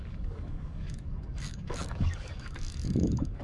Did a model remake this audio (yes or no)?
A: yes